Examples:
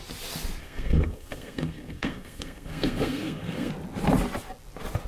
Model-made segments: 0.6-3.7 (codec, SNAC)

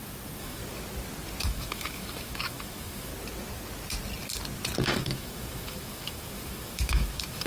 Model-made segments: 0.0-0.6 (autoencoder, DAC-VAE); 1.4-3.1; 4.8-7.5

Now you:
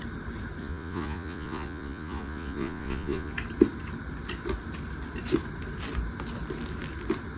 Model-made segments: 0.6-3.3 (vocoder, Vocos)